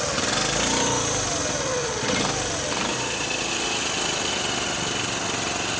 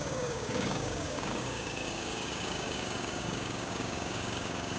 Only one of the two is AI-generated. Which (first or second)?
second